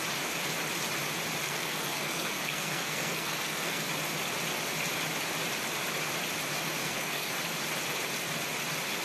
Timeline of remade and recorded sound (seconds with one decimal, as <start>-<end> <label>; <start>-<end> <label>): 0.0-1.4 recorded; 1.4-3.9 remade; 3.9-6.8 recorded; 6.8-7.3 remade; 7.3-9.0 recorded